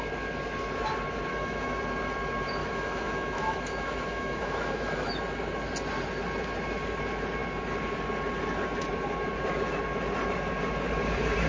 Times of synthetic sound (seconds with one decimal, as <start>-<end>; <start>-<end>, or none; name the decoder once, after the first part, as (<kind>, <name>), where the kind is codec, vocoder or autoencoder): 1.3-1.8 (autoencoder, DAC-VAE); 2.6-5.1

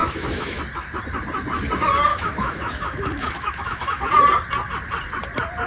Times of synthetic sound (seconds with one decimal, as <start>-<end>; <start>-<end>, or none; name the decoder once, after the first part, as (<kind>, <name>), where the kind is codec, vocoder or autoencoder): 0.0-0.6 (autoencoder, DAC-VAE); 2.1-4.0

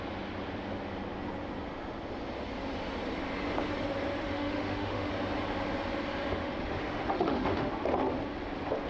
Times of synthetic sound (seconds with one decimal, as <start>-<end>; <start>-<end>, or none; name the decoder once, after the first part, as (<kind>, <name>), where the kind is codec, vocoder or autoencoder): 4.2-5.1 (autoencoder, DAC-VAE); 6.4-7.7

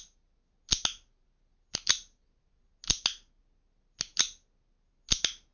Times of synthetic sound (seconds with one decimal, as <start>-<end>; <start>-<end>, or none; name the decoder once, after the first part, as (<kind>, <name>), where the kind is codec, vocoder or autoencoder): none

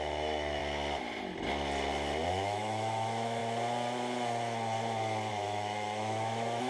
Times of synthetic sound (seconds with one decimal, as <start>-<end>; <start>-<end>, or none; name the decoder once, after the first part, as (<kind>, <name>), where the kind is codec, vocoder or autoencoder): 0.0-0.6 (autoencoder, DAC-VAE); 2.3-3.4; 5.3-6.7

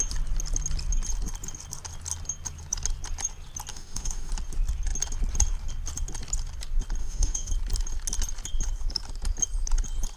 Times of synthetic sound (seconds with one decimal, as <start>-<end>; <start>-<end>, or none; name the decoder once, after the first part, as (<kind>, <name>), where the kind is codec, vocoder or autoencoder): 3.7-4.3 (autoencoder, DAC-VAE); 7.0-7.5

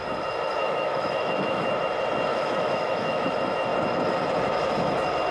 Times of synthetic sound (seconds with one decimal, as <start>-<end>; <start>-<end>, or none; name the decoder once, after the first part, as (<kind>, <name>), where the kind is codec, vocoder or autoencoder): 0.6-1.7 (autoencoder, DAC-VAE); 2.3-3.3

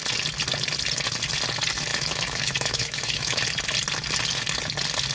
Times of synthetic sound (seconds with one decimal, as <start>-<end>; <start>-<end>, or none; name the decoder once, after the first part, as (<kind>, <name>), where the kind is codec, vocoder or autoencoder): 1.9-3.4 (autoencoder, DAC-VAE)